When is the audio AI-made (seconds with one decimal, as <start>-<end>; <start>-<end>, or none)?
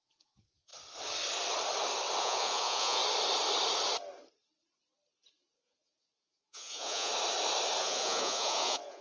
0.0-0.7; 2.2-3.0; 5.5-7.1; 7.8-9.0